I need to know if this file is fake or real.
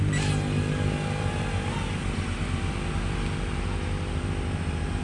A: real